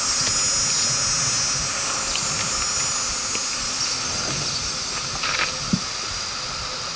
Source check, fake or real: real